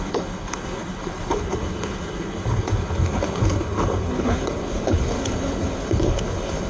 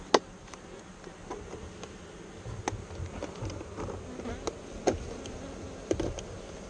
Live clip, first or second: second